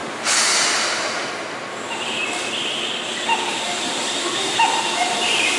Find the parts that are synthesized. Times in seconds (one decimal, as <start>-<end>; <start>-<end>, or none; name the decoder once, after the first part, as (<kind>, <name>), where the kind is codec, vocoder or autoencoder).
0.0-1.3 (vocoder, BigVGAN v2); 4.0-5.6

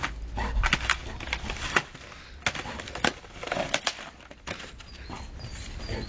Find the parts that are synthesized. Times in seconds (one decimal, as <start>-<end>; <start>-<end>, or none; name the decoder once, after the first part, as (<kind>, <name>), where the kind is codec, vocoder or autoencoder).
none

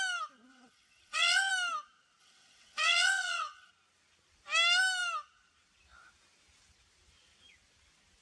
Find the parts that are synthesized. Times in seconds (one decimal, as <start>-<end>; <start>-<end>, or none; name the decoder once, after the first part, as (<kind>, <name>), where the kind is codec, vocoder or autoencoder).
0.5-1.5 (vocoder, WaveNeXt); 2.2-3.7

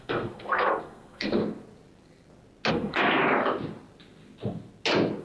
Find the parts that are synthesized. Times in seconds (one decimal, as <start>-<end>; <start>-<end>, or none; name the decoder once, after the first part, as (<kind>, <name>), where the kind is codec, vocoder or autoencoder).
0.0-1.4 (codec, SNAC); 2.7-3.2

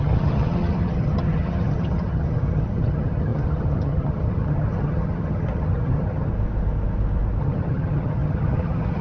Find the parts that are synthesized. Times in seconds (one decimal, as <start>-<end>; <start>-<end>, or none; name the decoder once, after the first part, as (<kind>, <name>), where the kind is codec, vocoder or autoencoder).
0.0-6.3 (vocoder, HiFi-GAN); 7.4-9.0